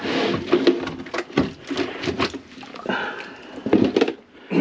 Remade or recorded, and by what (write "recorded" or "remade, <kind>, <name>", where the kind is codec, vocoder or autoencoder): recorded